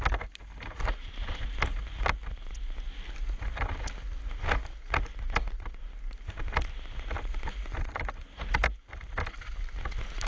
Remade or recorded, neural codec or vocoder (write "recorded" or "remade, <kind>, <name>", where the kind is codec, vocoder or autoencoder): recorded